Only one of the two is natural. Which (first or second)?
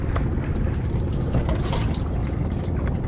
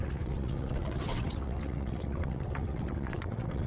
first